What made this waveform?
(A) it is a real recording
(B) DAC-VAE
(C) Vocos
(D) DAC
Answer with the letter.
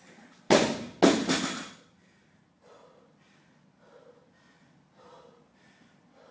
A